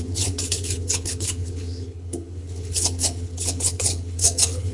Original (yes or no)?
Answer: no